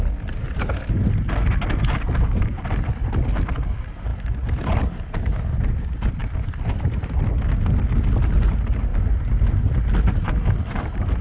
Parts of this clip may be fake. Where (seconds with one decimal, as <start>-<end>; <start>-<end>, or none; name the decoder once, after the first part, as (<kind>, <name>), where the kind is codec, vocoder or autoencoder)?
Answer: none